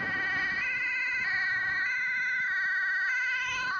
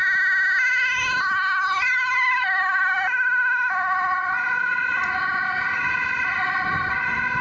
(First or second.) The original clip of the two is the first